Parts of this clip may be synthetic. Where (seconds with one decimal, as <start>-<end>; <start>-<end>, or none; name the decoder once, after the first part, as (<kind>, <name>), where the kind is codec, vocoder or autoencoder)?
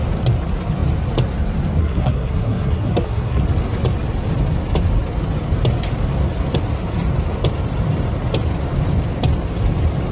1.8-3.4 (codec, SNAC)